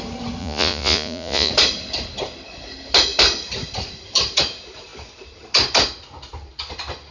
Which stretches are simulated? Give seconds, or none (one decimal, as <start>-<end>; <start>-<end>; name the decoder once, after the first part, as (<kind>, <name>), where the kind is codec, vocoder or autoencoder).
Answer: 0.4-1.5 (vocoder, Vocos)